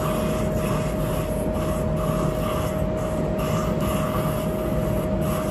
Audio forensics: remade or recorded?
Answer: recorded